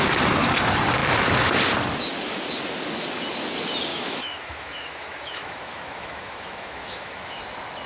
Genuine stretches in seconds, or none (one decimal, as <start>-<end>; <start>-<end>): 0.0-3.9; 7.4-7.9